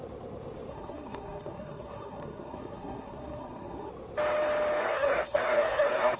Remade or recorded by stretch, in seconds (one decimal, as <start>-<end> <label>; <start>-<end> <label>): 0.0-0.7 recorded; 0.7-3.9 remade; 3.9-4.8 recorded; 4.8-6.2 remade